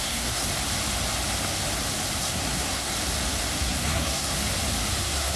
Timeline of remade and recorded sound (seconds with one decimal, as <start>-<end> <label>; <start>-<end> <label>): 0.0-0.5 remade; 0.5-2.2 recorded; 2.2-2.9 remade; 2.9-3.6 recorded; 3.6-4.4 remade; 4.4-5.0 recorded; 5.0-5.4 remade